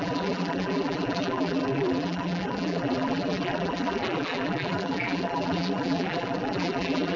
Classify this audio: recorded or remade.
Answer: remade